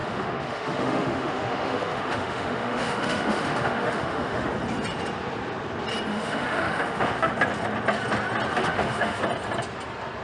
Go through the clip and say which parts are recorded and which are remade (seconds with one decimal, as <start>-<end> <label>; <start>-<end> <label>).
0.0-4.5 remade; 4.5-6.1 recorded; 6.1-7.3 remade; 7.3-8.5 recorded; 8.5-9.2 remade; 9.2-10.2 recorded